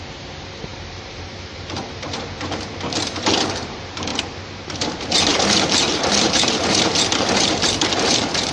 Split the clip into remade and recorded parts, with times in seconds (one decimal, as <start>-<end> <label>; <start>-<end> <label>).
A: 0.0-4.1 remade; 4.1-4.8 recorded; 4.8-8.5 remade